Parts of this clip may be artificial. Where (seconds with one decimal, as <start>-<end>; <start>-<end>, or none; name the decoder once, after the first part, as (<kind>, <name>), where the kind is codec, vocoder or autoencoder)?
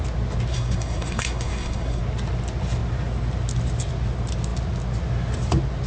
0.5-2.0 (codec, SNAC)